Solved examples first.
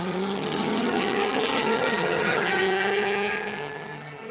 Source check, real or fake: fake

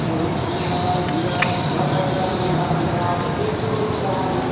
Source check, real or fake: real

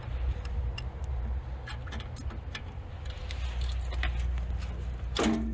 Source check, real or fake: real